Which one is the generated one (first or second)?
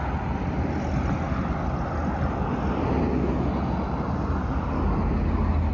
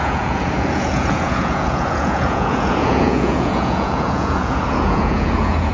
second